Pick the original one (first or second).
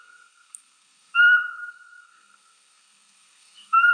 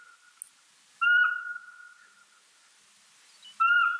second